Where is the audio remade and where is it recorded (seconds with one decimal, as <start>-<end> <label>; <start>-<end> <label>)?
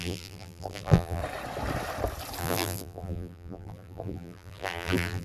0.0-1.2 remade; 1.2-2.4 recorded; 2.4-5.2 remade